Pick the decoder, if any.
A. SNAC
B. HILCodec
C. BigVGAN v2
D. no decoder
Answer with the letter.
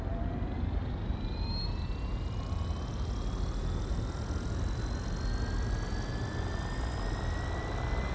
D